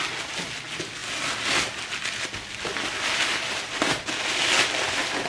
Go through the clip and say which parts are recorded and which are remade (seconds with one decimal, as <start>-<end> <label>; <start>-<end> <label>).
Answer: 0.0-5.3 recorded